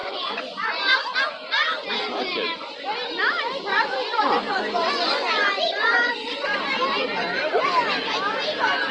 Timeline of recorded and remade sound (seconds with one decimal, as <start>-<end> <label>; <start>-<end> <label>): 0.0-1.0 remade; 1.0-3.7 recorded; 3.7-6.1 remade; 6.1-8.9 recorded